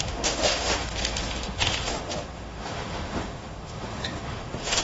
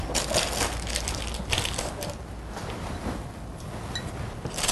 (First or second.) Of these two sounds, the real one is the second